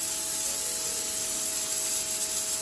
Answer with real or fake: real